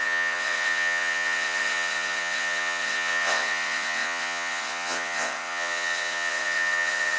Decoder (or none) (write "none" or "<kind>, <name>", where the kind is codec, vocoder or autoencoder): vocoder, WaveNeXt